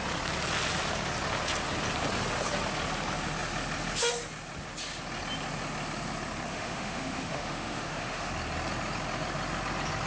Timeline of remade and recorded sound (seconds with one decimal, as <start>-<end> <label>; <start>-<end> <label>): 0.0-6.5 recorded; 6.5-8.3 remade; 8.3-10.1 recorded